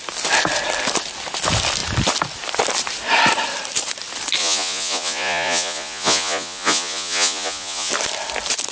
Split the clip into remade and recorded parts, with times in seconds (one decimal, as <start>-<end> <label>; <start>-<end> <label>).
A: 0.0-4.4 recorded; 4.4-7.9 remade; 7.9-8.7 recorded